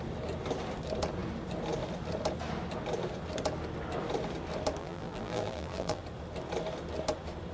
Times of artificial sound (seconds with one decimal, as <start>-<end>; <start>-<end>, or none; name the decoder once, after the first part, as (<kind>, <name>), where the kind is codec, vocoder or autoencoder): 4.8-6.0 (vocoder, BigVGAN v2)